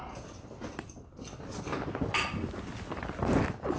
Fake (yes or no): no